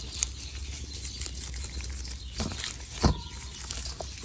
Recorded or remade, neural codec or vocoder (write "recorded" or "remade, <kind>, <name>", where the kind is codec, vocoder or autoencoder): recorded